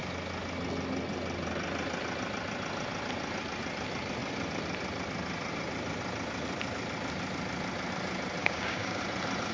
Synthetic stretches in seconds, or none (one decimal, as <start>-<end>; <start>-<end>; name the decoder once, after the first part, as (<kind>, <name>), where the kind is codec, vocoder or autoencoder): 8.4-9.0 (codec, DAC)